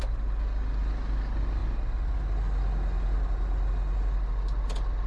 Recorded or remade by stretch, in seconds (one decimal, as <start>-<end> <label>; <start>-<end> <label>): 0.0-5.1 recorded